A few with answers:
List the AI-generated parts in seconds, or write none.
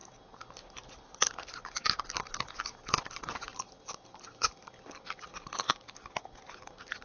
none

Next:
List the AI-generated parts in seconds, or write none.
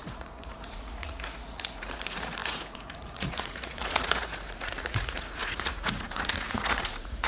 0.0-7.3 (vocoder, Vocos)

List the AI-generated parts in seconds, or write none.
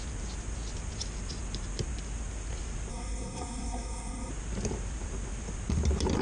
2.9-4.3 (codec, SNAC)